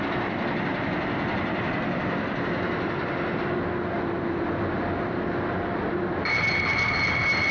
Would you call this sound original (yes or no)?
yes